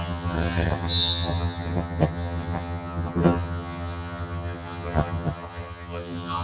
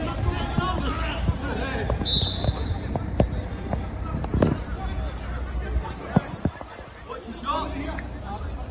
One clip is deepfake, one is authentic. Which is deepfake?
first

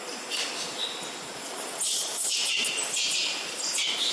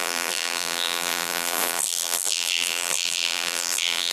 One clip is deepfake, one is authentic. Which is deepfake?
second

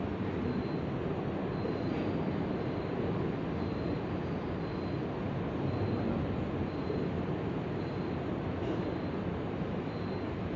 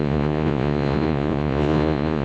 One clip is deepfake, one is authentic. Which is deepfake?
second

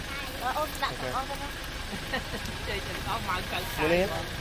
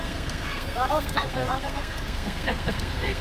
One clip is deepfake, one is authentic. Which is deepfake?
second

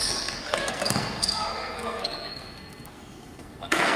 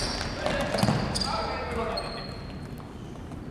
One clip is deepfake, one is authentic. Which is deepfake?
first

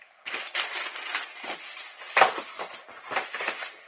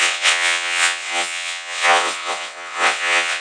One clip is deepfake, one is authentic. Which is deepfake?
second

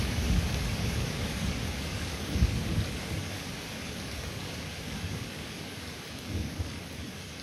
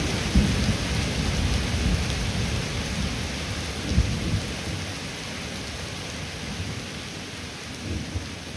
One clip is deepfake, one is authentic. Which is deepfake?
first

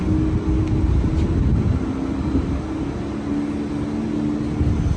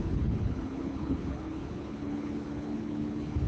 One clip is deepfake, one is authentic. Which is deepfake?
second